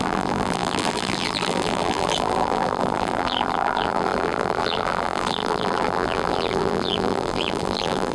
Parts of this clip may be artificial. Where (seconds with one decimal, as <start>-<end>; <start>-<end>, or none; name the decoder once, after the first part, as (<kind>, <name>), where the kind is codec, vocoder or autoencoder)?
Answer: 0.0-8.1 (vocoder, BigVGAN v2)